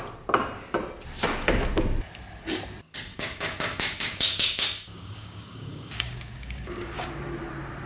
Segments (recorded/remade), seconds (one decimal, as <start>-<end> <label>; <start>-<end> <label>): 0.0-3.1 recorded; 3.1-7.1 remade; 7.1-7.9 recorded